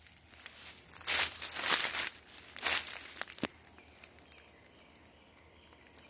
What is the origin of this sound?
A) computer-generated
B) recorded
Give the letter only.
B